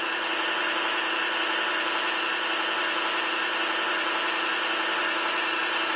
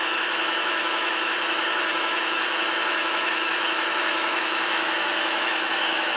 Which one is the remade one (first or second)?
second